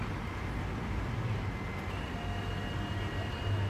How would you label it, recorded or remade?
recorded